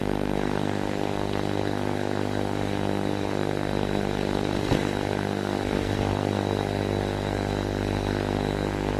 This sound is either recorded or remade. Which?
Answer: remade